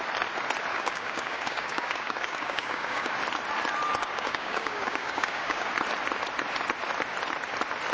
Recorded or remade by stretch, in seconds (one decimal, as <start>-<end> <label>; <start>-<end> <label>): 0.0-0.7 recorded; 0.7-3.1 remade; 3.1-4.0 recorded; 4.0-5.7 remade; 5.7-7.9 recorded